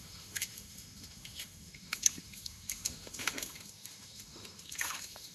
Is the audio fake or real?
fake